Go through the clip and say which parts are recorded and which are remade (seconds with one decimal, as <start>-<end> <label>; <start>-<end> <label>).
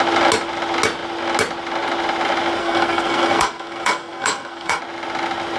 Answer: 0.0-2.6 recorded; 2.6-4.8 remade; 4.8-5.6 recorded